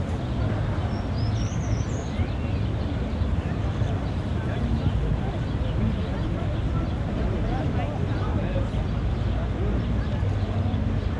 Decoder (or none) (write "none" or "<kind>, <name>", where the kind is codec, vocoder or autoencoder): none